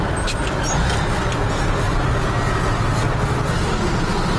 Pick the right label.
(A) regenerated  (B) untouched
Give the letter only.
B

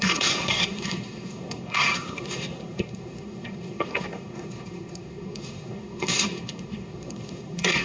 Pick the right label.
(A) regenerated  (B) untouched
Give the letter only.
A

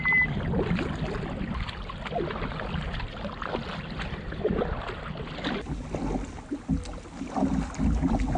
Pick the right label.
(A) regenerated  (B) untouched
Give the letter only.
B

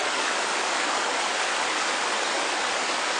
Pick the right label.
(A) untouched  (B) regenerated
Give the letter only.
B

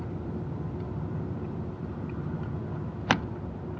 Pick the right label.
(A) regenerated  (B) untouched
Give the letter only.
B